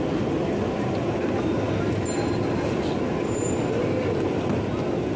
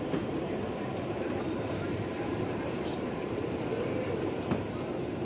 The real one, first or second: first